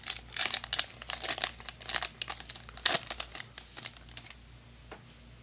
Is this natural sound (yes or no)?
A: yes